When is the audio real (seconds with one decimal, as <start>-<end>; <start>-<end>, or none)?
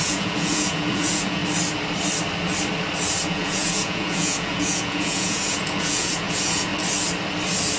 1.4-3.2; 6.7-7.8